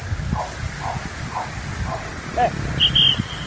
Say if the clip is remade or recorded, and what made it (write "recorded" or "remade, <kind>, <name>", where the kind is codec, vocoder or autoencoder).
recorded